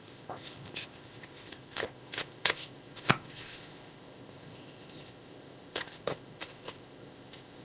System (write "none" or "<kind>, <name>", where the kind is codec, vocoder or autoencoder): codec, ZipCodec